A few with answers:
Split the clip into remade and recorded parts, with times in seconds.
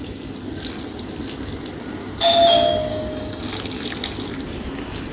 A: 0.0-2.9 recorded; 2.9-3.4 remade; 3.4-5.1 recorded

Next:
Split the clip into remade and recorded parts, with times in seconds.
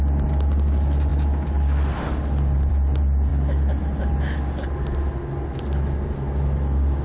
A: 0.0-7.0 recorded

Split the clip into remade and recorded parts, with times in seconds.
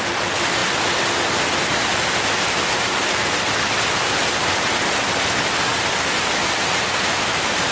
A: 0.0-7.7 recorded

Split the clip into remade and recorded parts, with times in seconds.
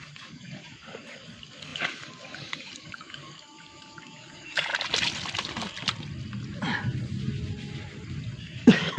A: 0.0-4.7 remade; 4.7-8.4 recorded; 8.4-9.0 remade